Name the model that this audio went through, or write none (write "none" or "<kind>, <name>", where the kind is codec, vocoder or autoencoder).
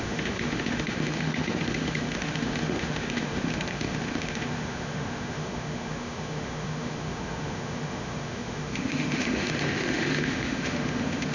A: autoencoder, DAC-VAE